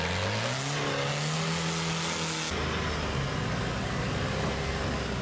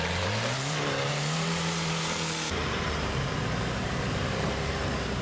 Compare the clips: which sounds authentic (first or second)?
first